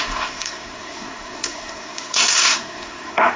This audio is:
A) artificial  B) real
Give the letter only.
A